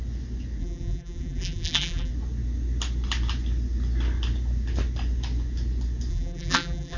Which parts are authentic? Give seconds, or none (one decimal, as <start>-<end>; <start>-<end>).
0.0-0.6; 2.1-6.1